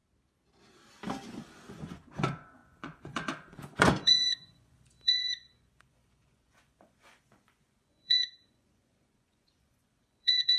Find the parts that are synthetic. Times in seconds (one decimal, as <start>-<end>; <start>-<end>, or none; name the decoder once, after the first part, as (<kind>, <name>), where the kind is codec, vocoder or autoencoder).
1.3-10.6 (vocoder, Vocos)